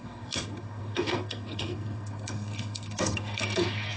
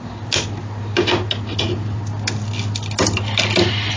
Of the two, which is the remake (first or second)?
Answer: first